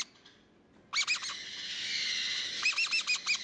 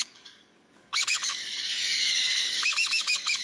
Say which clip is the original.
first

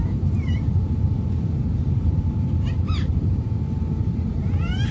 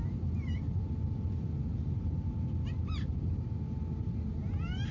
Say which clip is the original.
second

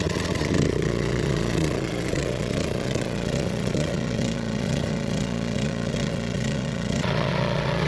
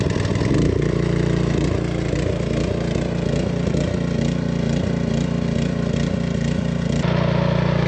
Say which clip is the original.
second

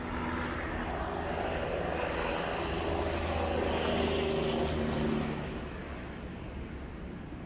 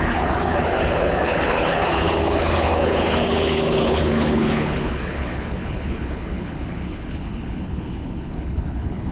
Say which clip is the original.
first